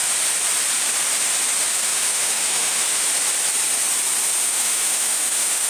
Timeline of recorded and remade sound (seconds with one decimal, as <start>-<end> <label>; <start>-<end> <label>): 0.0-1.7 recorded; 1.7-3.0 remade; 3.0-4.4 recorded; 4.4-5.7 remade